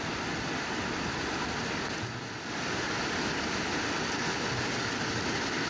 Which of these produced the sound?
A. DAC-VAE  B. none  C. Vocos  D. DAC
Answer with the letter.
B